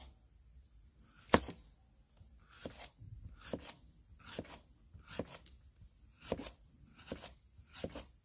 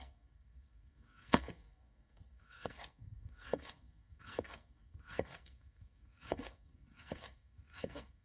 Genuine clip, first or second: first